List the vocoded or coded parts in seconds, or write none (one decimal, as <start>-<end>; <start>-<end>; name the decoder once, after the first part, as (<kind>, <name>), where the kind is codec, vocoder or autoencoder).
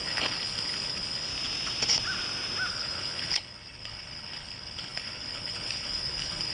0.0-1.3 (codec, HILCodec); 2.7-6.5